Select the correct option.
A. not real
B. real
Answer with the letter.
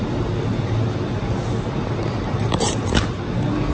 B